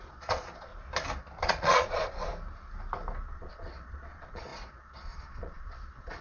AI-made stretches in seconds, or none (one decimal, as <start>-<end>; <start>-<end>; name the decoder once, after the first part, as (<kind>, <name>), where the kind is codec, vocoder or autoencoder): 0.0-0.7 (vocoder, Vocos); 1.4-2.3; 3.3-6.2